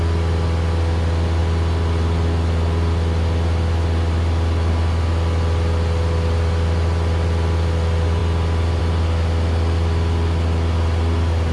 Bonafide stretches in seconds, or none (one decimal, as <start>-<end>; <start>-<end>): 0.0-11.5